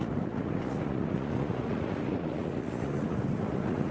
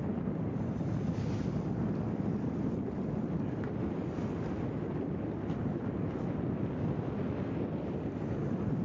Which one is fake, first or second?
first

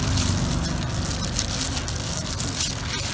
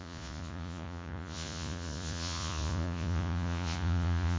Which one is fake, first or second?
second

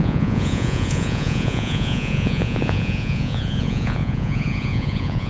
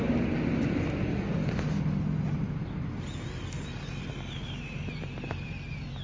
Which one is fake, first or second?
first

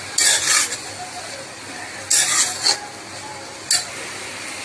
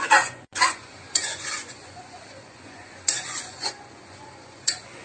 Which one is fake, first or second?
second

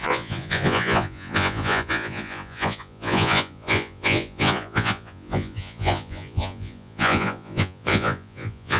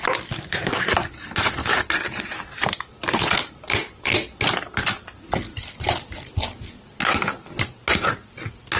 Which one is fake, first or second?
first